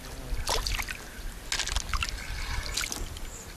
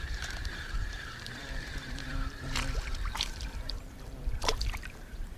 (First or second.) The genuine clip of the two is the first